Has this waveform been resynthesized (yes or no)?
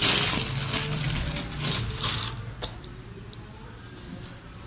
no